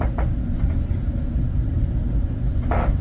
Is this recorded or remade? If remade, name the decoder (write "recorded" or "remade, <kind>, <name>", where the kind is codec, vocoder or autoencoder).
recorded